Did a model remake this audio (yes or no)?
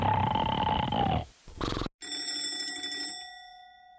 no